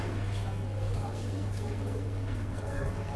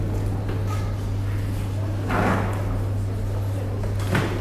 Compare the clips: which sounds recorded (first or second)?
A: second